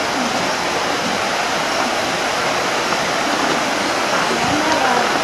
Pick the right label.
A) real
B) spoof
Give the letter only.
A